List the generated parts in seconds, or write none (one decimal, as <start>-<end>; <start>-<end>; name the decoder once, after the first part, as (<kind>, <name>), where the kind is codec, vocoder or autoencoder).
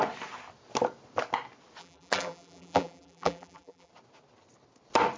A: 1.8-3.9 (vocoder, BigVGAN v2)